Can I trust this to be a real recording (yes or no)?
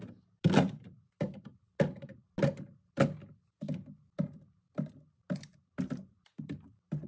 yes